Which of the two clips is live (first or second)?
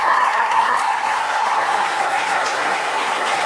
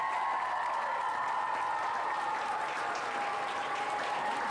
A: second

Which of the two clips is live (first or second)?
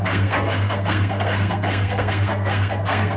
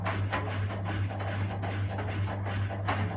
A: second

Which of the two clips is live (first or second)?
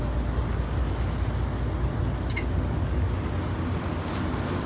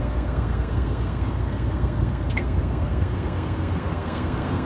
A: first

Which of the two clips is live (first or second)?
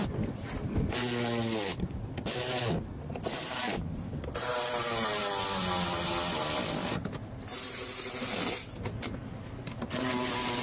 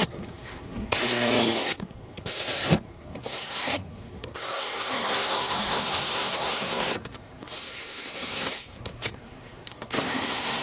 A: first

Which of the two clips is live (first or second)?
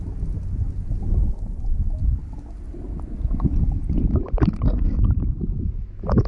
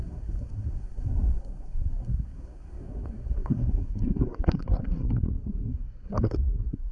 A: first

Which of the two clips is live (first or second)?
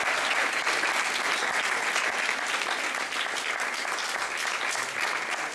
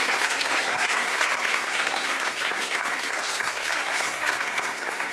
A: first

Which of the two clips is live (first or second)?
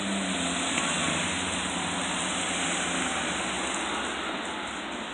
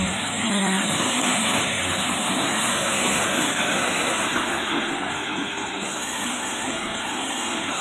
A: first